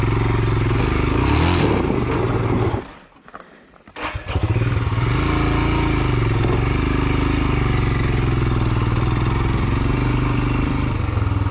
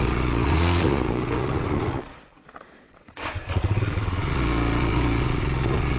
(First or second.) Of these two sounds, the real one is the first